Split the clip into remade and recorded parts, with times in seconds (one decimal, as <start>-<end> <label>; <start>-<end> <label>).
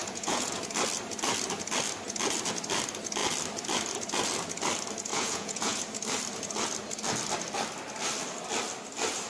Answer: 0.0-0.6 remade; 0.6-5.1 recorded; 5.1-5.8 remade; 5.8-9.3 recorded